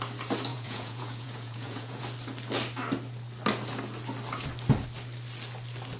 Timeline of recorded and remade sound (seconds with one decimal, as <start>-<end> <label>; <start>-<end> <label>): 0.0-0.5 recorded; 0.5-2.0 remade; 2.0-6.0 recorded